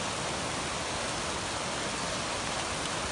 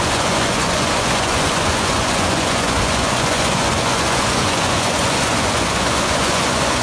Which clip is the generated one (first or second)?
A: second